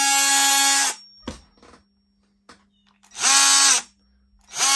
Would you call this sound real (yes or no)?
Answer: yes